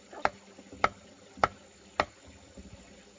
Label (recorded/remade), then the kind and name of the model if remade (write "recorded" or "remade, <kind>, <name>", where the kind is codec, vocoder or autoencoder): recorded